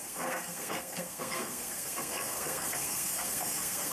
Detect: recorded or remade remade